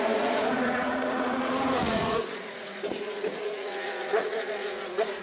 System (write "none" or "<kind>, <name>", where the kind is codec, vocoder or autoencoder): vocoder, Vocos